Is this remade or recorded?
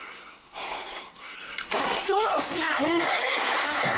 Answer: remade